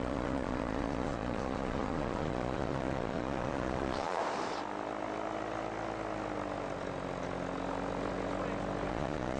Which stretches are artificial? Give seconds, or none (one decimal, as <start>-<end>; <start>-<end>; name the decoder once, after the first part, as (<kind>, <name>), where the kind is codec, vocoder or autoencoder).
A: 0.0-4.2 (vocoder, Vocos); 8.9-9.4